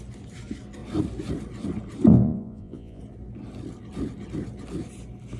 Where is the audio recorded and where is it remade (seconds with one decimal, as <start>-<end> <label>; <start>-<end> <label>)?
0.0-2.1 recorded; 2.1-3.0 remade; 3.0-5.4 recorded